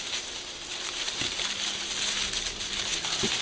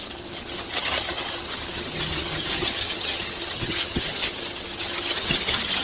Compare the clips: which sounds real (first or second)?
first